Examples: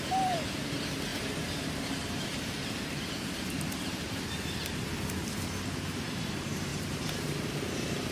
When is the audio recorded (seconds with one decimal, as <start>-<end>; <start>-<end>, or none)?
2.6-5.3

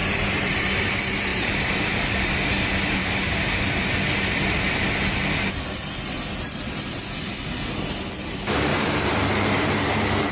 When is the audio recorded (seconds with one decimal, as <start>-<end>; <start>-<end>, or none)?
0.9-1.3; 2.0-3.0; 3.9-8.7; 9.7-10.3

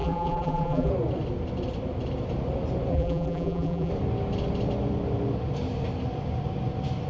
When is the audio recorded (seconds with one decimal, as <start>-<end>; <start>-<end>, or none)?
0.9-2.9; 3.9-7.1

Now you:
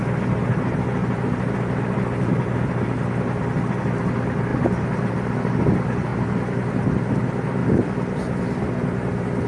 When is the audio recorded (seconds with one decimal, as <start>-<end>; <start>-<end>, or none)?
0.0-9.5